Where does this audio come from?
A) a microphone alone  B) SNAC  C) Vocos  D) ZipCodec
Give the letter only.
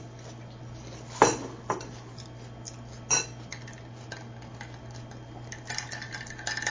A